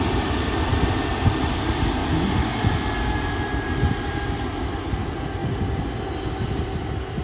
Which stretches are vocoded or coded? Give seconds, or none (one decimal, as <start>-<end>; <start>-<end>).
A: none